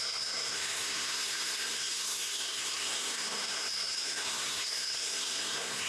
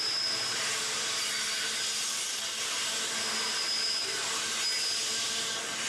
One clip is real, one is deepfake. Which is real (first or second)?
second